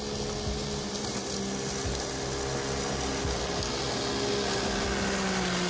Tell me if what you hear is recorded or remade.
recorded